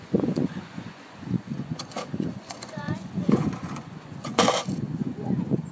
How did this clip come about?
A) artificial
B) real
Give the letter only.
A